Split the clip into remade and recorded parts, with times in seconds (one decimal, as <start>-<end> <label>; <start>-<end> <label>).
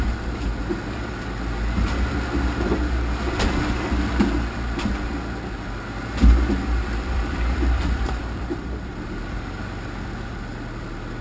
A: 0.0-6.8 recorded; 6.8-8.9 remade; 8.9-11.2 recorded